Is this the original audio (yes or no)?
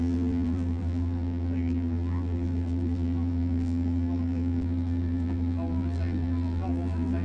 no